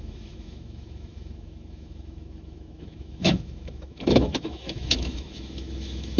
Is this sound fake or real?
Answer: fake